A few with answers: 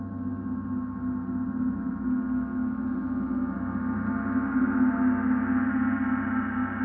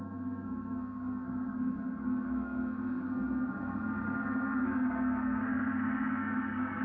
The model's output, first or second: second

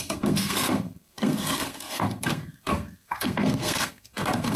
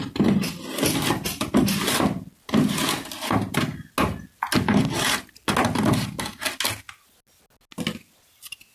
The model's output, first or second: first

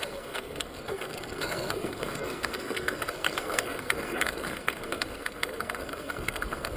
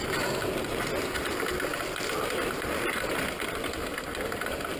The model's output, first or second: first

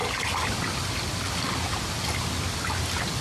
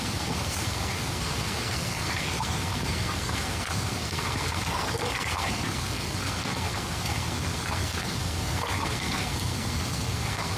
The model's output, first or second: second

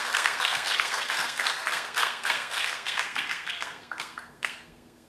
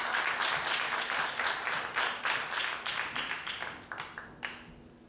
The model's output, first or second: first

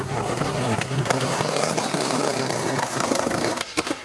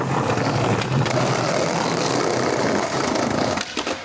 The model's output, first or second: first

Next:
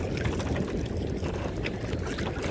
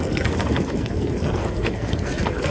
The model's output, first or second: second